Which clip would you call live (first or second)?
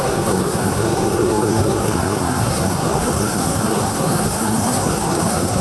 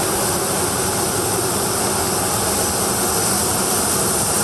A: second